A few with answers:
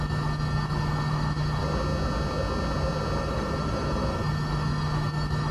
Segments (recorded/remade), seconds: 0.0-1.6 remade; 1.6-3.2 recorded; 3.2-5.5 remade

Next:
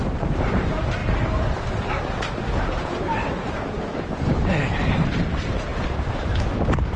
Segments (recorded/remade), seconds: 0.0-1.0 remade; 1.0-4.8 recorded; 4.8-5.7 remade; 5.7-6.6 recorded; 6.6-7.0 remade

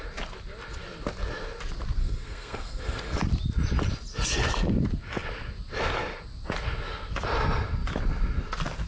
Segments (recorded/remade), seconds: 0.0-2.0 recorded; 2.0-3.2 remade; 3.2-8.9 recorded

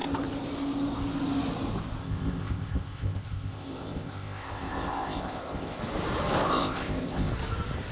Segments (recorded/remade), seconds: 0.0-2.0 recorded; 2.0-5.8 remade; 5.8-6.5 recorded; 6.5-7.3 remade; 7.3-7.9 recorded

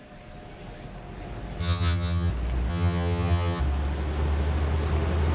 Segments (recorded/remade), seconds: 0.0-1.6 recorded; 1.6-2.3 remade; 2.3-2.7 recorded; 2.7-3.6 remade; 3.6-5.3 recorded